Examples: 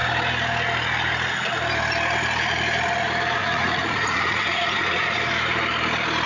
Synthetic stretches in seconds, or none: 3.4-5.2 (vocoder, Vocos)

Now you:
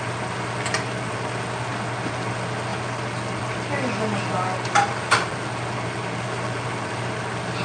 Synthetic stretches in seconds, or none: none

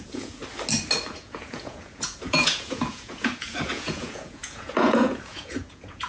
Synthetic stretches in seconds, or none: 0.0-0.4 (vocoder, Vocos); 1.1-6.1

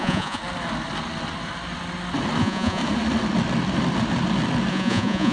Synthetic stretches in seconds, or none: 0.0-0.4 (vocoder, Vocos); 2.4-2.8; 4.7-5.3

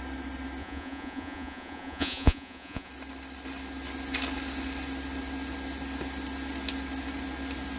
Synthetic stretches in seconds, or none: 0.6-2.9 (vocoder, Vocos)

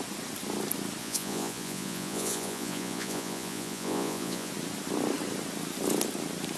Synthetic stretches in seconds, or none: 1.0-4.5 (vocoder, Vocos)

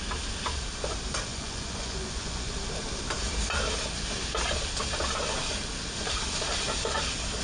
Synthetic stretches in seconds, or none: 1.3-2.5 (vocoder, Vocos)